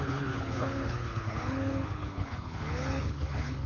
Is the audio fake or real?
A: fake